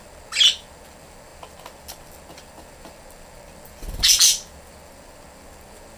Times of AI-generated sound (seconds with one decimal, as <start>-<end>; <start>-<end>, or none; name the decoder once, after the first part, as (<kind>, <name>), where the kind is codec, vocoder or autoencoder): none